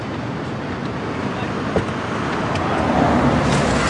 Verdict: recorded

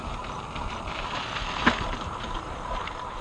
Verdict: recorded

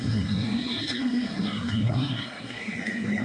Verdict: remade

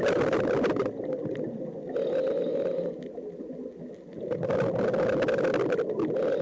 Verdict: recorded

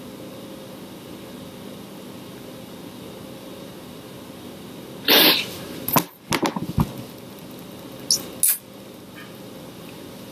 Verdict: recorded